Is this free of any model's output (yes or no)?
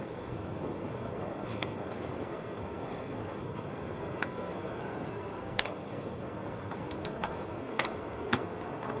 no